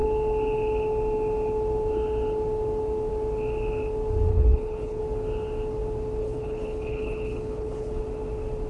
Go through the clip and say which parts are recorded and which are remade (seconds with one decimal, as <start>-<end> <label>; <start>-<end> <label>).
0.0-4.3 recorded; 4.3-5.0 remade; 5.0-6.2 recorded; 6.2-8.0 remade; 8.0-8.7 recorded